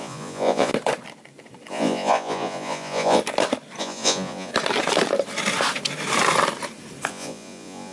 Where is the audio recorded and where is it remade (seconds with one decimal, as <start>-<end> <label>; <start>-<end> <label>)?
0.0-0.7 remade; 0.7-1.7 recorded; 1.7-3.2 remade; 3.2-3.8 recorded; 3.8-4.5 remade; 4.5-7.1 recorded; 7.1-7.9 remade